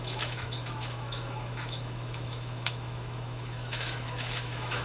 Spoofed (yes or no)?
yes